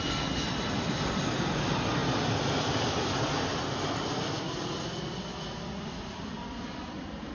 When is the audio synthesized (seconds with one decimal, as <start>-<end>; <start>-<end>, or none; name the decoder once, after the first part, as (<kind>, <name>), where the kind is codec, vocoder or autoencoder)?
none